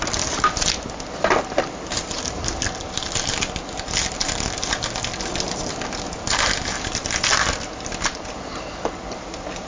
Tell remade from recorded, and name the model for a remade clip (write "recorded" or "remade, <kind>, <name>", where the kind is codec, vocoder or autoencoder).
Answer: recorded